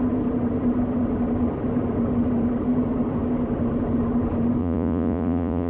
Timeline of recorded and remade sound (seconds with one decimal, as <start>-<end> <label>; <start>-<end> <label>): 0.0-4.6 recorded; 4.6-5.7 remade